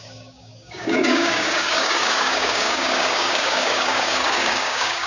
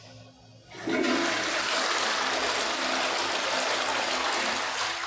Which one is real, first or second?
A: second